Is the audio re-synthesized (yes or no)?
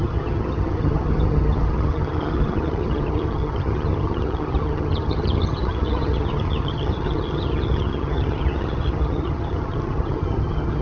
yes